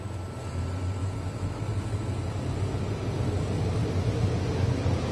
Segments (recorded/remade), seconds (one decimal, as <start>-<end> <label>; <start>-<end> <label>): 0.0-1.0 recorded; 1.0-1.7 remade; 1.7-5.1 recorded